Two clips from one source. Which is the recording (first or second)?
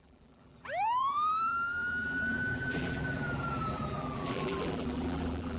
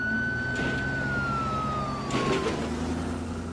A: second